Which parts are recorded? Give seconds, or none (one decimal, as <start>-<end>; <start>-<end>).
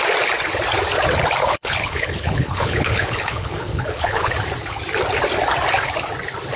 0.0-1.4; 4.3-6.6